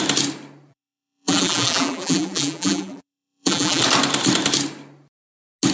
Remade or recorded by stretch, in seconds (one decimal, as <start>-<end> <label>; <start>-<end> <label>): 0.0-0.7 recorded; 0.7-3.8 remade; 3.8-5.7 recorded